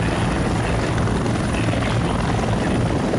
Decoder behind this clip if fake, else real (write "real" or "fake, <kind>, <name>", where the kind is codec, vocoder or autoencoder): real